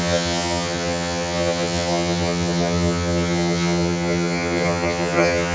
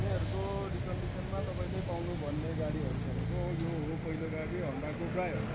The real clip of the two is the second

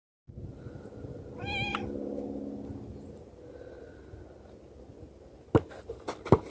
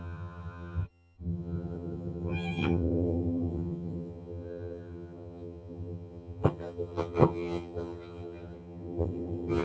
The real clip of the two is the first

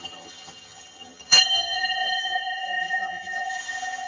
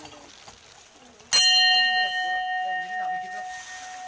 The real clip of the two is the second